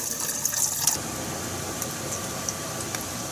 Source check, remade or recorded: recorded